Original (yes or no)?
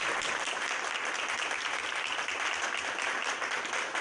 yes